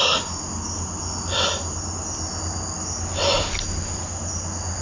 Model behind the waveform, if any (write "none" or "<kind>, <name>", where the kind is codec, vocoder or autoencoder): none